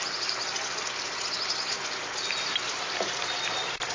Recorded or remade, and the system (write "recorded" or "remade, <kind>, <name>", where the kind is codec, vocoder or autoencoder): recorded